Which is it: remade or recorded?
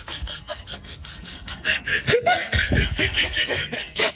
remade